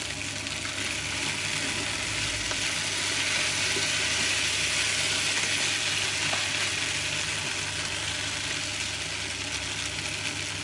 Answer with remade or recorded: recorded